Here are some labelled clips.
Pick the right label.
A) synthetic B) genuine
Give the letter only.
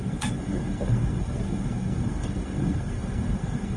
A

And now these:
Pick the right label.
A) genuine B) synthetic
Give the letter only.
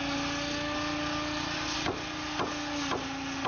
A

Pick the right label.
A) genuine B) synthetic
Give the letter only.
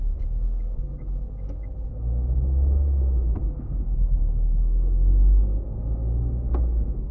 B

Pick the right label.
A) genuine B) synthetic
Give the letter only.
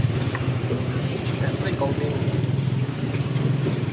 B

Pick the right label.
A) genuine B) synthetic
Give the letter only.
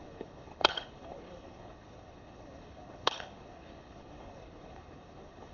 B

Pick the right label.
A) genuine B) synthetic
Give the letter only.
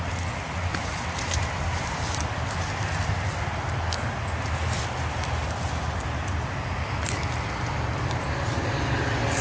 A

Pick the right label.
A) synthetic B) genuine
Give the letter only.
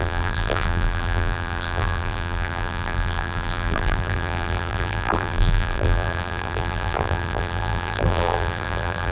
A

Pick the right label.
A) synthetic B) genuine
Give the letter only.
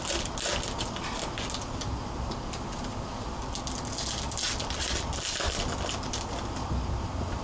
B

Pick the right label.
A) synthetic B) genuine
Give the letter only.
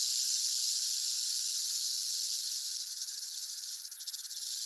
B